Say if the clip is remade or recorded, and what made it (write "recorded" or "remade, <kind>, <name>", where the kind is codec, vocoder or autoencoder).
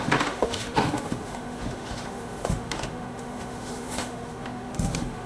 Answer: remade, autoencoder, DAC-VAE